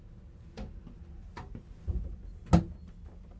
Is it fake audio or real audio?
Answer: real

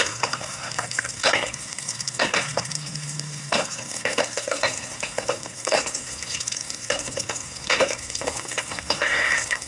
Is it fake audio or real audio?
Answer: fake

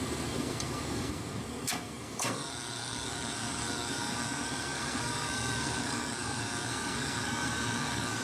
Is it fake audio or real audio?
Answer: fake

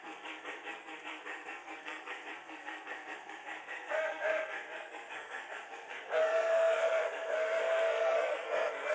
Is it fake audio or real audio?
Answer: fake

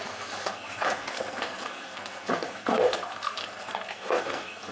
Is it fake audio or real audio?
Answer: fake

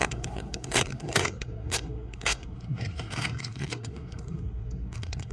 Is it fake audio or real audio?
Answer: fake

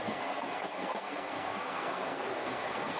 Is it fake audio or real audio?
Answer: fake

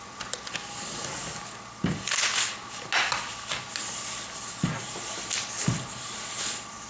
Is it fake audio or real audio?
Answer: real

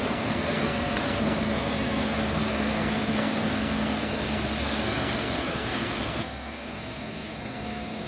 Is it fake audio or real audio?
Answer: fake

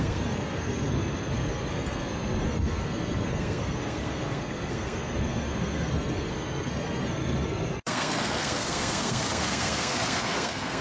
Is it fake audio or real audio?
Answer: fake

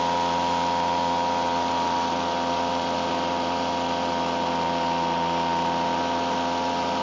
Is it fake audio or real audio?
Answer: real